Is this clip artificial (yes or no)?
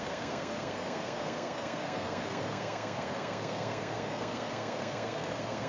yes